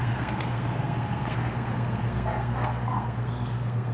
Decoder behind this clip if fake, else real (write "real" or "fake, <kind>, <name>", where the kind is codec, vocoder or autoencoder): fake, codec, SNAC